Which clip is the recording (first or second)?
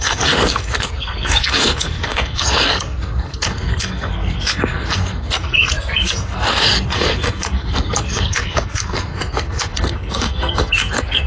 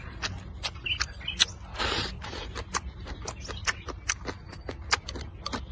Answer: second